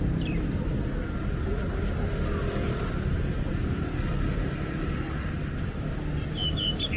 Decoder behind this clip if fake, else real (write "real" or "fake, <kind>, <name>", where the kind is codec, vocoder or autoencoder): real